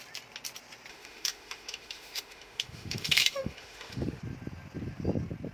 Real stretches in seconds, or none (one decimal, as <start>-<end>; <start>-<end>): 0.0-0.9; 4.2-5.5